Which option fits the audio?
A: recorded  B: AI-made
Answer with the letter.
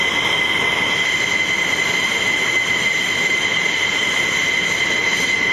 A